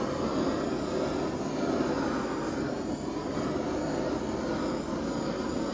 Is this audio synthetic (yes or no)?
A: no